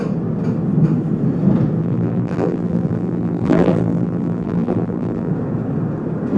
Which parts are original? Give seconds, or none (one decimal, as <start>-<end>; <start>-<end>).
0.0-1.8; 5.3-6.4